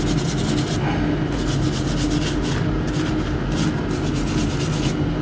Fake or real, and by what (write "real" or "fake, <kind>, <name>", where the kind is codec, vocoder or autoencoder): real